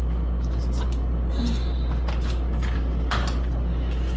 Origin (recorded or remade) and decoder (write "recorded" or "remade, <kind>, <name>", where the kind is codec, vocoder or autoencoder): recorded